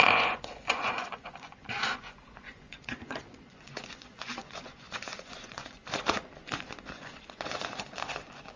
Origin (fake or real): fake